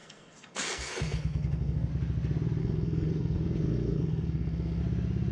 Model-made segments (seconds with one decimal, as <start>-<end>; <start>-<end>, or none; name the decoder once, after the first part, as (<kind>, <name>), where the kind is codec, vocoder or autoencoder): 0.0-1.9 (codec, SNAC); 2.6-4.8